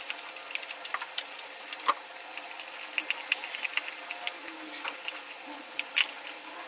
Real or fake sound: real